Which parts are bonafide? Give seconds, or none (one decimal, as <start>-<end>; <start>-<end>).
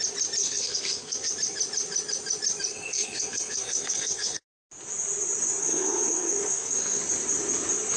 0.0-0.4; 1.3-2.7; 4.4-5.6; 7.0-8.0